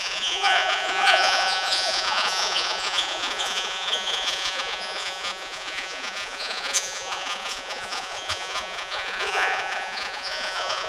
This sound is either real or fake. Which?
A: fake